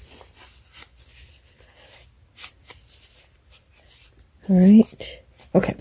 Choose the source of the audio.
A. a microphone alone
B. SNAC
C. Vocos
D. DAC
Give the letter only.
A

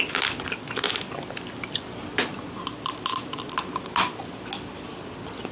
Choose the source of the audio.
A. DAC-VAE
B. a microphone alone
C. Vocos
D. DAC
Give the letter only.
B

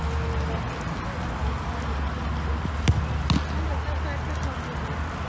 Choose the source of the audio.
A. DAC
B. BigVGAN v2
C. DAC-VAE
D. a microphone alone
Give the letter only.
D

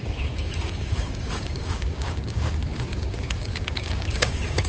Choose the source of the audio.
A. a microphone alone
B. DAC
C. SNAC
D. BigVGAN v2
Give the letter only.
B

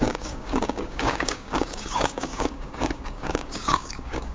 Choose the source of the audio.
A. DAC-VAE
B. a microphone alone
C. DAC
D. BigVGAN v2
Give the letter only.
C